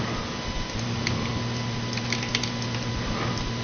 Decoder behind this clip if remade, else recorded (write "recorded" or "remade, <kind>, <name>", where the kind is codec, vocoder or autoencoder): recorded